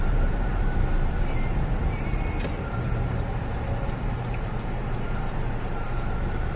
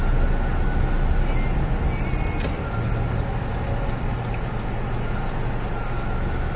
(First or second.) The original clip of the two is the second